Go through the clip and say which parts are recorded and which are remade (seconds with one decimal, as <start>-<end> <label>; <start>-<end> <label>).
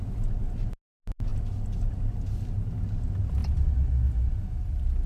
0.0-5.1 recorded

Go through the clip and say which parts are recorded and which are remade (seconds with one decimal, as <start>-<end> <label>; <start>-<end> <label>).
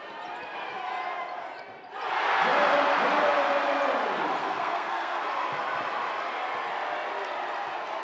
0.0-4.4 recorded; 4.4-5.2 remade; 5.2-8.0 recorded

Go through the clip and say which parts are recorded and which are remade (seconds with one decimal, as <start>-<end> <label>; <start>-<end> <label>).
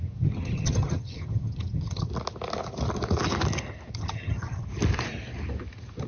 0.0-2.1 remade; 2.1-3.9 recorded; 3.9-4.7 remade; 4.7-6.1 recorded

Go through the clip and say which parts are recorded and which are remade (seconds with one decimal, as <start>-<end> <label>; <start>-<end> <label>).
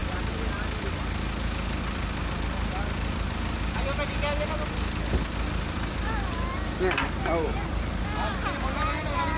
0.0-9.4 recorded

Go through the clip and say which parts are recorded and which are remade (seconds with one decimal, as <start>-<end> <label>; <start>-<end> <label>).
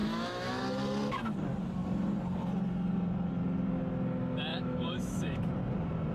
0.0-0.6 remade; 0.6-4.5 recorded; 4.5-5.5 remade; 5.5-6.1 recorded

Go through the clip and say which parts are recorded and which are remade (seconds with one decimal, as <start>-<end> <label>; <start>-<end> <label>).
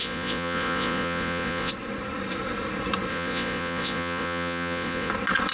0.0-1.7 remade; 1.7-3.1 recorded; 3.1-5.1 remade; 5.1-5.5 recorded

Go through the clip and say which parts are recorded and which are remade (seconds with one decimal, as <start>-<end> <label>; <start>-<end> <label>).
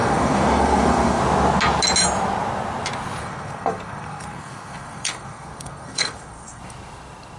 0.0-1.2 remade; 1.2-3.2 recorded; 3.2-6.6 remade; 6.6-7.4 recorded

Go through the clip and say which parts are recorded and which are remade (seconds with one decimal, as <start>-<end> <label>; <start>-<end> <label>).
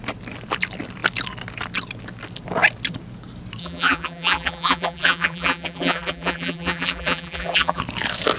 0.0-3.6 recorded; 3.6-7.8 remade; 7.8-8.4 recorded